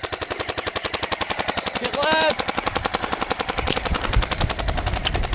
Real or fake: real